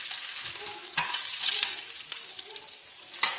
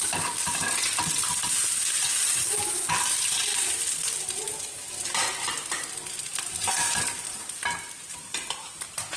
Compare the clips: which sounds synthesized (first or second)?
first